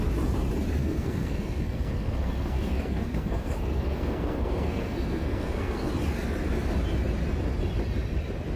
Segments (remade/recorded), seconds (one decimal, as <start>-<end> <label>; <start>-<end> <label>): 0.0-0.8 recorded; 0.8-5.9 remade; 5.9-8.6 recorded